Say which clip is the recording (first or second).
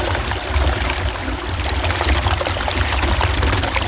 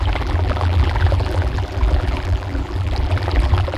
first